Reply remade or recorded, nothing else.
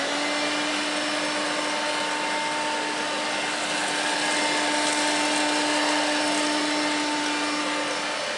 recorded